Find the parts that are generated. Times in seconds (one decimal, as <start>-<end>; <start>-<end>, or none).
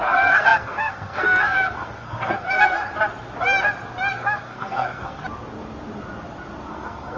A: 0.0-2.9; 4.1-5.2; 6.7-7.2